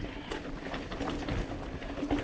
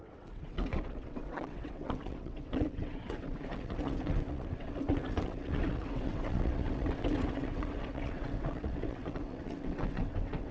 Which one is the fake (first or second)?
second